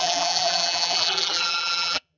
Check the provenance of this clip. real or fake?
fake